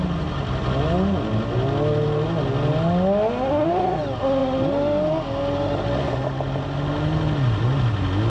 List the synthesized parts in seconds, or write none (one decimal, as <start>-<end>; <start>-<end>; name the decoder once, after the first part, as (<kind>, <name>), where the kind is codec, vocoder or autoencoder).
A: none